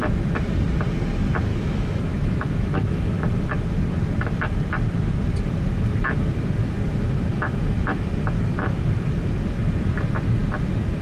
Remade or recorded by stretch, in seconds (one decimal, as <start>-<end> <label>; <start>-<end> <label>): 0.0-1.5 recorded; 1.5-3.3 remade; 3.3-11.0 recorded